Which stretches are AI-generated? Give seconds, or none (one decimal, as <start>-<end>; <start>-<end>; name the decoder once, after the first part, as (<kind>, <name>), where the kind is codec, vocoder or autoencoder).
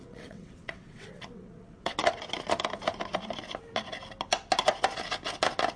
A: 0.0-2.0 (vocoder, WaveNeXt)